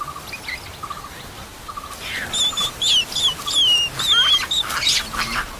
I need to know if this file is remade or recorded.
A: recorded